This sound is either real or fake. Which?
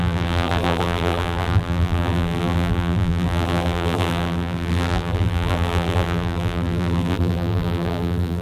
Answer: fake